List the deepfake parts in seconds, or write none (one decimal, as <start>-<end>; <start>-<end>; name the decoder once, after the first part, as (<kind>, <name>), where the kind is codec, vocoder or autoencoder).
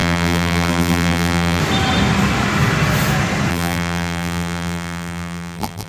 0.0-1.6 (vocoder, BigVGAN v2); 3.5-5.9